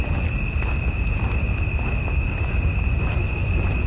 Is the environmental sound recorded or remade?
recorded